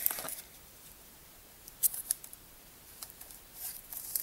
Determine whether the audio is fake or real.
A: fake